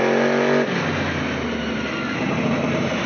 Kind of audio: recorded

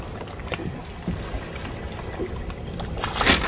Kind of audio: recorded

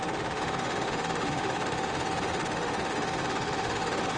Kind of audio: remade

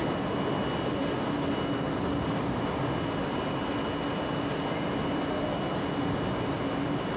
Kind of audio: recorded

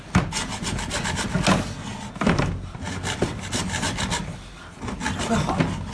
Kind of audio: recorded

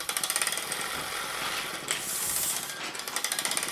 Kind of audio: recorded